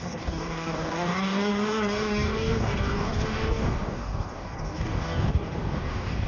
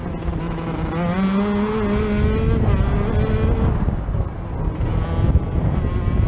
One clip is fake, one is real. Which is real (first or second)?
second